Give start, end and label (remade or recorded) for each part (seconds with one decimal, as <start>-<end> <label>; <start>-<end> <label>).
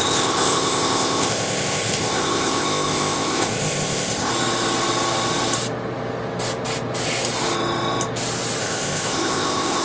0.0-4.3 remade; 4.3-8.6 recorded; 8.6-9.8 remade